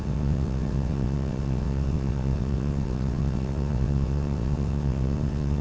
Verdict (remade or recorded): remade